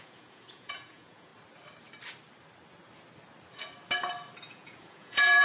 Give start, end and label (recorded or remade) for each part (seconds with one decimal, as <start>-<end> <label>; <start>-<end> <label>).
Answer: 0.0-1.3 remade; 1.3-4.5 recorded; 4.5-5.4 remade